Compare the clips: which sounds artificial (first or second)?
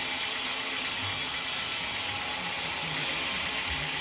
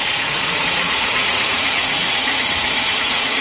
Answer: second